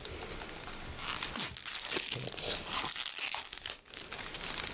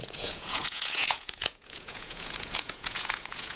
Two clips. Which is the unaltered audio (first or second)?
first